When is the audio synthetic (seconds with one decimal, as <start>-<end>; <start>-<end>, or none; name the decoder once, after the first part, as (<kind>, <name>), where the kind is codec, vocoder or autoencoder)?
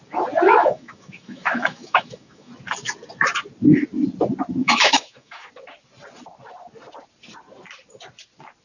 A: 0.6-2.5 (autoencoder, DAC-VAE); 4.6-5.5